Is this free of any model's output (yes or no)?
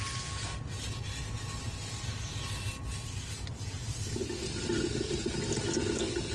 yes